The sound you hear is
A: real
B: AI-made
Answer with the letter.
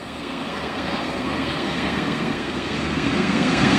B